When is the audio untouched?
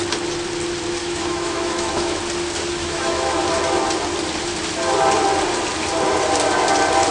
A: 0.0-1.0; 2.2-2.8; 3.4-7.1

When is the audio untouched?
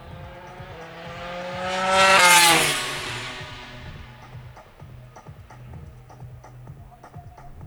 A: 0.0-2.1; 3.3-7.7